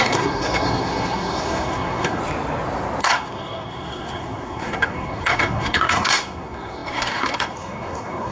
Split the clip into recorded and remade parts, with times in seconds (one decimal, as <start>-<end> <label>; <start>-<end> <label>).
0.0-2.2 remade; 2.2-3.0 recorded; 3.0-8.3 remade